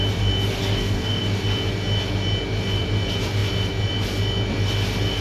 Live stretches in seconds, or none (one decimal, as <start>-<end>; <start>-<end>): 0.0-0.6; 1.2-5.2